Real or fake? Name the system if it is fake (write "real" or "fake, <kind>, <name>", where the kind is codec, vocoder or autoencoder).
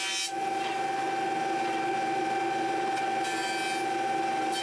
real